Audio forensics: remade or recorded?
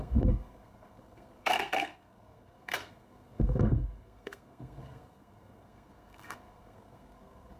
remade